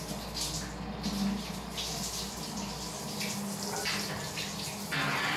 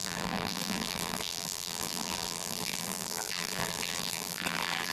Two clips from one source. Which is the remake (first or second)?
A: second